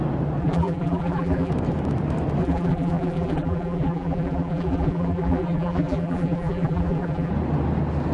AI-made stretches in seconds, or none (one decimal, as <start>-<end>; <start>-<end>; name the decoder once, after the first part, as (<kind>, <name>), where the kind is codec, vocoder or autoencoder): 0.4-1.5 (vocoder, BigVGAN v2); 2.4-7.3